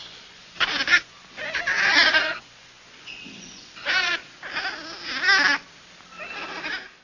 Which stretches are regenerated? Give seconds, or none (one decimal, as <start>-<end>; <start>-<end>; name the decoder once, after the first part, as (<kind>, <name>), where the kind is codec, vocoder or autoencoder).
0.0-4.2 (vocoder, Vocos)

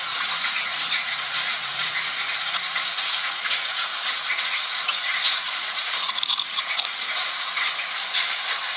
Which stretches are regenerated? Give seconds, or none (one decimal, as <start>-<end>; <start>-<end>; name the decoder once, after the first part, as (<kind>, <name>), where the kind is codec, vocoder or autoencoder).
0.0-8.8 (vocoder, Vocos)

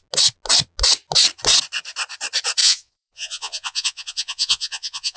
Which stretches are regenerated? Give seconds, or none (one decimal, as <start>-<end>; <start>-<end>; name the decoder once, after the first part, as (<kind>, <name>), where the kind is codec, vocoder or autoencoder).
2.6-5.2 (vocoder, Vocos)